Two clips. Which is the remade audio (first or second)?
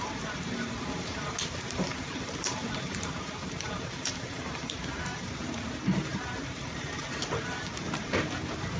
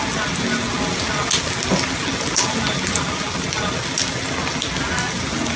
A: first